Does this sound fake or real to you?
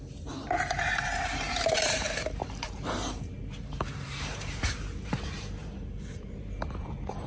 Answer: fake